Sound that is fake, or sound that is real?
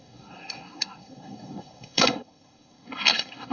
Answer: fake